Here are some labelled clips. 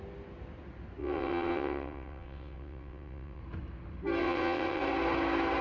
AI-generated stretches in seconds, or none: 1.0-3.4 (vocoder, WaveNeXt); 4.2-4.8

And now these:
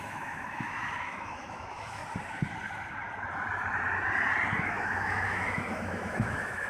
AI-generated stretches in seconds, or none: 0.0-2.0 (autoencoder, DAC-VAE); 4.6-6.7

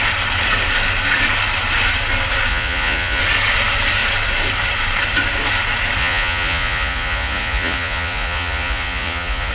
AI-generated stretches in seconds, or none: 2.5-3.2 (vocoder, Vocos); 6.0-9.5

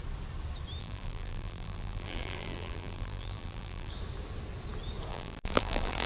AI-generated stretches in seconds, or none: 0.8-3.9 (vocoder, BigVGAN v2); 5.1-6.1

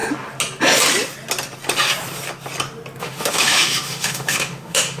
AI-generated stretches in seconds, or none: 3.0-5.0 (autoencoder, DAC-VAE)

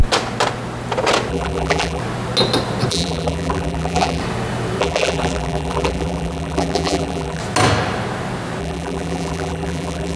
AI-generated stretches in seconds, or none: 1.3-2.0 (vocoder, BigVGAN v2); 2.9-4.2; 4.8-7.4; 8.6-10.2

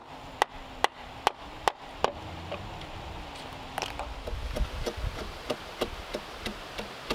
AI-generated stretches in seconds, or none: none